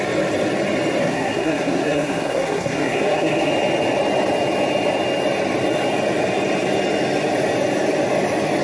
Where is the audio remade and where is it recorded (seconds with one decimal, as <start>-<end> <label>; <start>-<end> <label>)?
0.0-1.0 recorded; 1.0-3.5 remade; 3.5-8.6 recorded